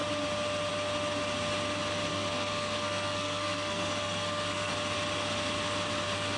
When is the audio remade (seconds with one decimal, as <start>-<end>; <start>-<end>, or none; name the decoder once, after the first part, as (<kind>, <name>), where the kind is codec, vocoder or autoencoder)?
2.1-4.7 (codec, SNAC)